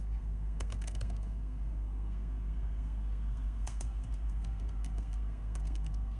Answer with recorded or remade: remade